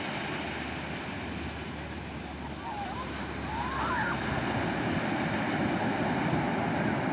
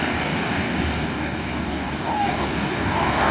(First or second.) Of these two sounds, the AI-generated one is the second